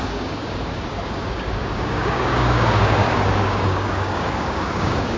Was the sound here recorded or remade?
remade